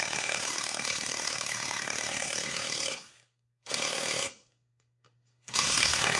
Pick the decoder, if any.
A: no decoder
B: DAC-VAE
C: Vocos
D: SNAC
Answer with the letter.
D